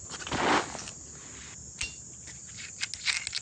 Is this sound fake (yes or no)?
no